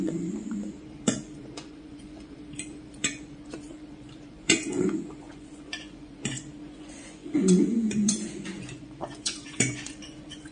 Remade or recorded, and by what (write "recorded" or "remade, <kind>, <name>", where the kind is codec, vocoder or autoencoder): remade, vocoder, Vocos